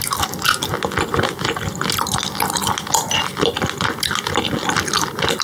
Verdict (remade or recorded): recorded